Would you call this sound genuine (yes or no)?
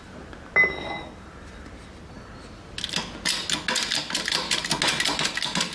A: yes